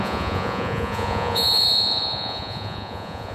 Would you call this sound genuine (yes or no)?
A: no